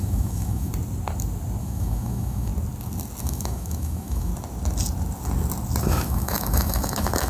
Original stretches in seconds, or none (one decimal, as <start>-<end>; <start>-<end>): 0.7-1.6; 2.5-3.2; 4.3-5.8